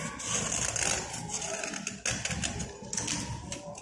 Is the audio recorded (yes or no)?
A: yes